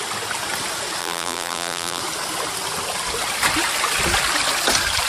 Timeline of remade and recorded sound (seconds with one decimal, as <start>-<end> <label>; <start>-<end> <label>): 0.0-1.0 recorded; 1.0-2.0 remade; 2.0-5.1 recorded